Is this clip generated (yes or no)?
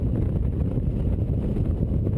yes